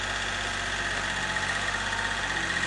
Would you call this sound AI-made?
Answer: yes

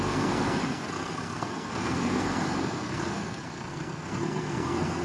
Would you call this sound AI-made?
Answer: yes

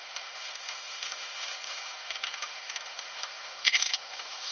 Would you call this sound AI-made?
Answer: yes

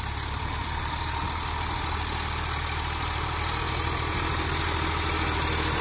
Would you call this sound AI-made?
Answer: no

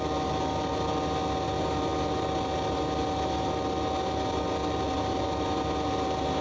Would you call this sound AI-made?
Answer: no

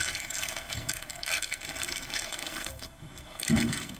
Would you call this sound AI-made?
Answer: yes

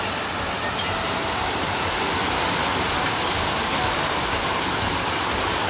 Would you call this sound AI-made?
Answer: no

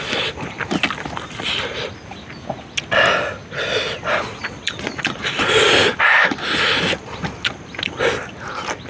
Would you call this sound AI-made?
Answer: no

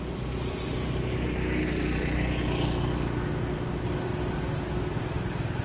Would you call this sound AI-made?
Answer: no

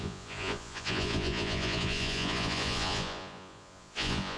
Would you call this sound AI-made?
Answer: yes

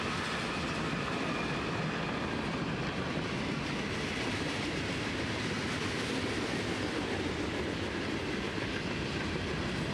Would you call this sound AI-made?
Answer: no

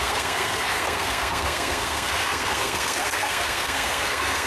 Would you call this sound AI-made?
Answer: yes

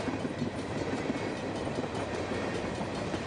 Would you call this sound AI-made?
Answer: yes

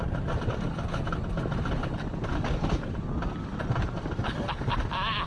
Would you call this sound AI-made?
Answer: no